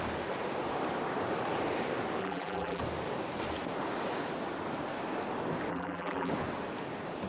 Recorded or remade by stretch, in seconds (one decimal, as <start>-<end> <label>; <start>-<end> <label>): 0.0-2.2 recorded; 2.2-2.8 remade; 2.8-5.7 recorded; 5.7-6.3 remade; 6.3-7.3 recorded